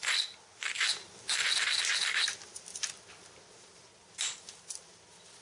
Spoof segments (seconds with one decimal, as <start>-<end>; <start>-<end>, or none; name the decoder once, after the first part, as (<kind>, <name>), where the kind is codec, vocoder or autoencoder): none